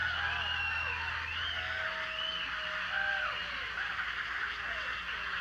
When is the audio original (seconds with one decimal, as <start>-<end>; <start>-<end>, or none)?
0.0-5.4